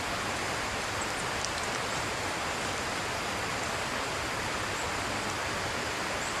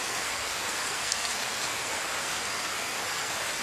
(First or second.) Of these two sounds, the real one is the first